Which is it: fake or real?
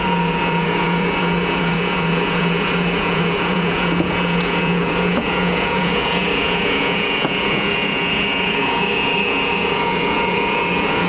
fake